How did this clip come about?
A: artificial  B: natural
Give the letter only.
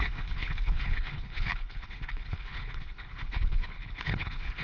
A